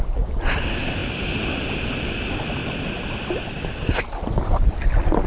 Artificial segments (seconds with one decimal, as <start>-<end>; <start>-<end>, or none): none